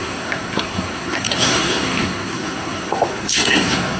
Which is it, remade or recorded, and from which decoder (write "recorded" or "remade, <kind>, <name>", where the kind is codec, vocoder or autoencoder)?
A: remade, codec, SNAC